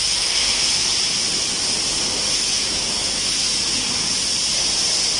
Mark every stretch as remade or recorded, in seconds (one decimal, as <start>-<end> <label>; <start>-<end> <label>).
0.0-0.9 remade; 0.9-2.3 recorded; 2.3-3.5 remade; 3.5-5.2 recorded